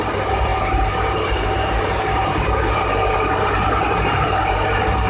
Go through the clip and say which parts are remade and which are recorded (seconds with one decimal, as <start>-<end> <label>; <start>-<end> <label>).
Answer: 0.0-5.1 remade